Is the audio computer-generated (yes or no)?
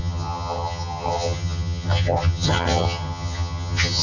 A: yes